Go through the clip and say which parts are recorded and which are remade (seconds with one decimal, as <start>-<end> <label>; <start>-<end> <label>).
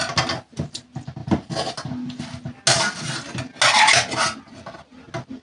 0.0-5.4 recorded